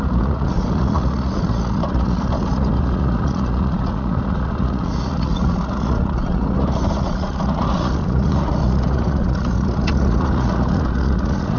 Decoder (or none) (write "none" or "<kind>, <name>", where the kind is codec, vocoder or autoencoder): vocoder, Vocos